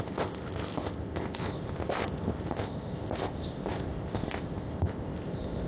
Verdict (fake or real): fake